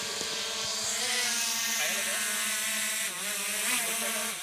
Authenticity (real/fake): real